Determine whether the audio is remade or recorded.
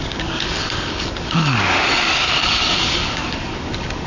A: remade